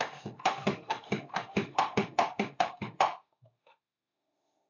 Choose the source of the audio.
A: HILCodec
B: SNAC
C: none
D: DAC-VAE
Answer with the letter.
D